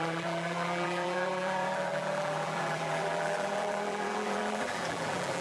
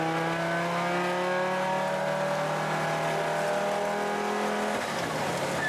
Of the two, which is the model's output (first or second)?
first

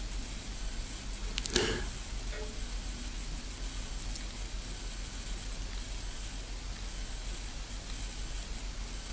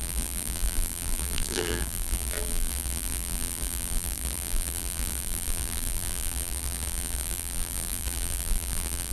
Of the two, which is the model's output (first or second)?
second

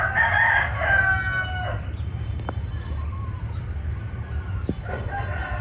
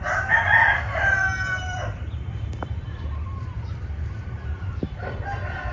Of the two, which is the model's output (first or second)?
second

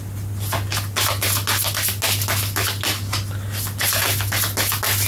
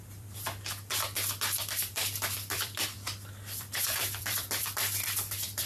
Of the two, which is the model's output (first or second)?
second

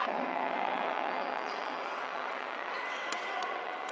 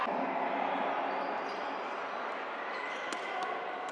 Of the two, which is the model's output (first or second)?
first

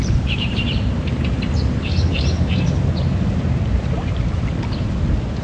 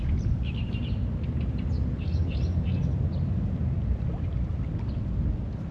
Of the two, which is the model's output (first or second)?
first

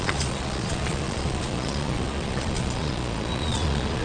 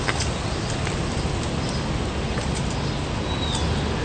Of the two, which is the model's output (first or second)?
first